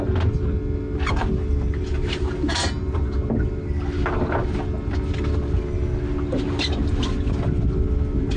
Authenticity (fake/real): real